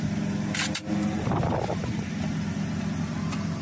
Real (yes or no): yes